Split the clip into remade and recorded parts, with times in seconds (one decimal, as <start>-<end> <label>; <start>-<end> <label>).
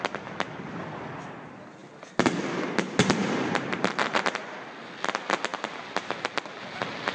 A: 0.0-3.2 recorded; 3.2-4.2 remade; 4.2-7.1 recorded